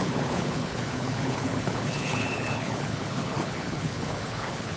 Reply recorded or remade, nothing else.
remade